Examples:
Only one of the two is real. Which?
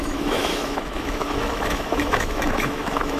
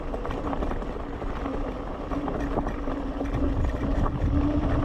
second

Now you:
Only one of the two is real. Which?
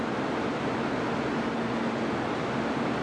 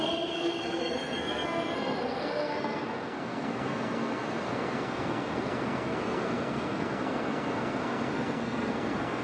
first